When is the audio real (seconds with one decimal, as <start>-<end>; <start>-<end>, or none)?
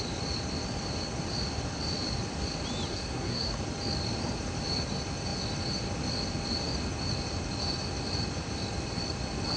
0.0-2.9; 3.5-9.6